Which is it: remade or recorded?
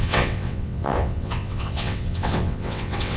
remade